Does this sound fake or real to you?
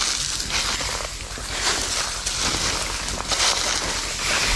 real